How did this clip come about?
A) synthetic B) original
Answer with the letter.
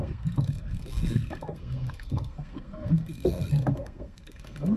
A